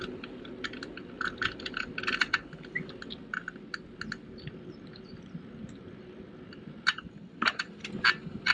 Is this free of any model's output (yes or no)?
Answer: yes